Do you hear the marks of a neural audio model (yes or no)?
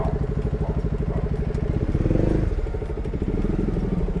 no